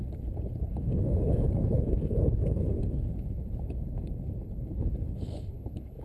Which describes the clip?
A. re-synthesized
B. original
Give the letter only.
A